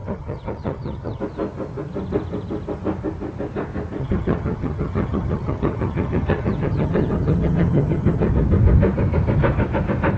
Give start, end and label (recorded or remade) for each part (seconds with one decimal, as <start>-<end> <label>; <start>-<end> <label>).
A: 0.0-1.2 remade; 1.2-4.0 recorded; 4.0-8.3 remade; 8.3-10.2 recorded